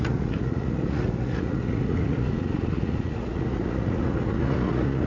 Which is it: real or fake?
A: fake